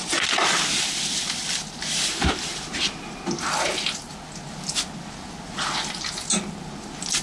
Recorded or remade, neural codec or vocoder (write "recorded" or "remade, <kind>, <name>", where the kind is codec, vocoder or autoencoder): recorded